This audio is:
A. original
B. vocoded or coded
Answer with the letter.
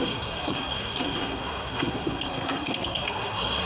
B